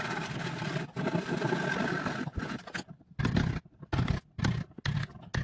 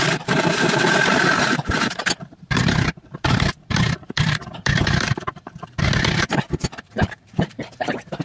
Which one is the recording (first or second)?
first